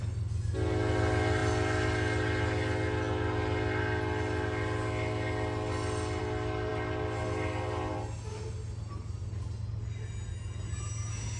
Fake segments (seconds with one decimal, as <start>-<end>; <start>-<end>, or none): none

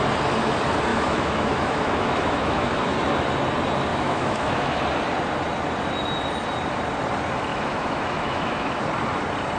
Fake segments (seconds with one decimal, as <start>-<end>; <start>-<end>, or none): 0.9-2.8; 3.9-4.8; 7.5-8.8